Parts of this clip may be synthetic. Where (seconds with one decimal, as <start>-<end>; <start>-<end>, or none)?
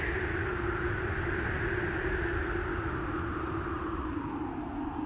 none